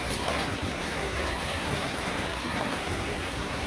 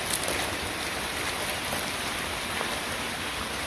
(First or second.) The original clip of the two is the second